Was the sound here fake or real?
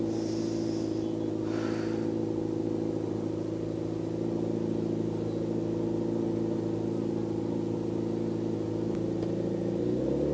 real